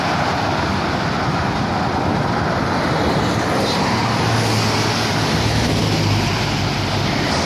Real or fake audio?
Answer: real